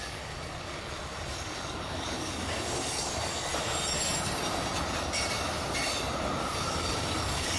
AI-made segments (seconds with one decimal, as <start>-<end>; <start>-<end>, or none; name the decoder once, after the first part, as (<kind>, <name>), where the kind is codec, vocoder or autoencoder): 0.0-3.5 (codec, DAC); 6.5-7.6